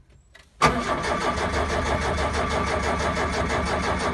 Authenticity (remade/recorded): recorded